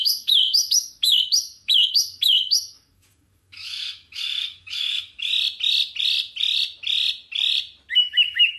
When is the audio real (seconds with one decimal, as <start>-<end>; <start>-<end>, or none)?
5.3-7.9